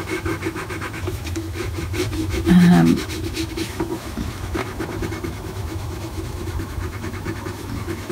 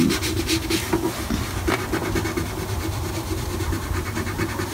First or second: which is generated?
first